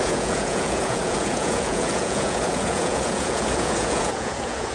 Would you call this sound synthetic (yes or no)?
yes